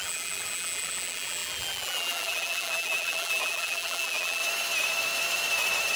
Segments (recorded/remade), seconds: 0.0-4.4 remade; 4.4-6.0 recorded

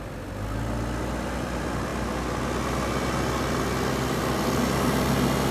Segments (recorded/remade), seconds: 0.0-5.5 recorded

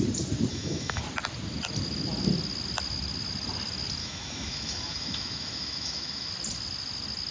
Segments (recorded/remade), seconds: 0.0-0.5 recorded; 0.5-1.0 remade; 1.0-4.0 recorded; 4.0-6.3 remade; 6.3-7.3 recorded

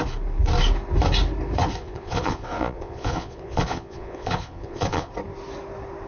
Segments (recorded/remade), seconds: 0.0-1.8 recorded; 1.8-5.1 remade; 5.1-6.1 recorded

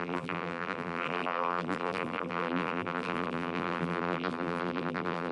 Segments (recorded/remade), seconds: 0.0-5.3 remade